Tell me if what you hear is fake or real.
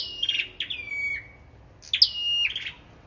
real